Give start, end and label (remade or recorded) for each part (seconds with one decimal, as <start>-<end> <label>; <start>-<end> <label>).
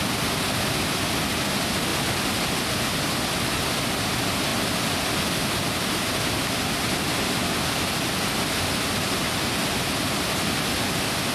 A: 0.0-1.9 recorded; 1.9-3.8 remade; 3.8-10.0 recorded; 10.0-10.9 remade; 10.9-11.3 recorded